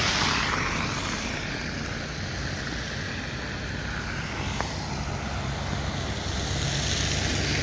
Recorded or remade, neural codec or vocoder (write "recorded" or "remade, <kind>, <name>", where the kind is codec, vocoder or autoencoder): recorded